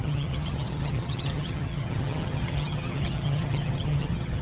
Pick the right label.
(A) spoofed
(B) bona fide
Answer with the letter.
A